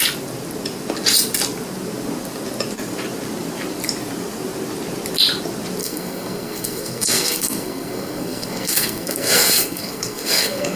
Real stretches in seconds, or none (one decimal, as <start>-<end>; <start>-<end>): 0.0-5.8